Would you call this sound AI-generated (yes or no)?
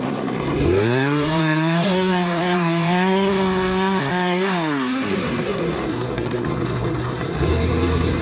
yes